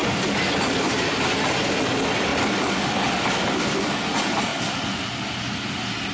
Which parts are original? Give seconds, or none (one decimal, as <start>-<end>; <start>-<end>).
0.0-6.1